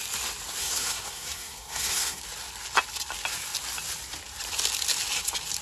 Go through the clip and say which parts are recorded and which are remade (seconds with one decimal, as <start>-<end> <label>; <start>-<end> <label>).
0.0-0.6 recorded; 0.6-2.2 remade; 2.2-5.6 recorded